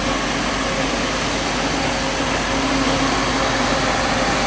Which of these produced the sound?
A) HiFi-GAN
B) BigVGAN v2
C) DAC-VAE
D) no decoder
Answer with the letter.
D